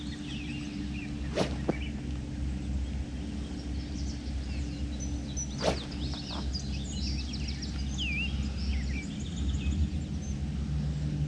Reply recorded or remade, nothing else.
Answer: recorded